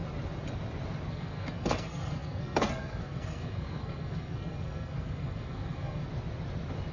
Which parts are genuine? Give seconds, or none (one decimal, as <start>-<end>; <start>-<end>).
0.0-1.1; 6.1-6.9